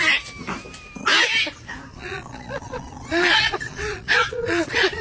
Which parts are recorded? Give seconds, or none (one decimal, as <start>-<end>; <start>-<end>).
0.0-1.9